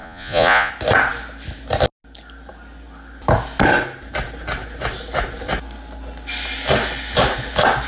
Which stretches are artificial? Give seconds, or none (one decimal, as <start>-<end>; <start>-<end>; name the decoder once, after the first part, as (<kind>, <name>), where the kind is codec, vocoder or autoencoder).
0.0-0.7 (vocoder, Vocos)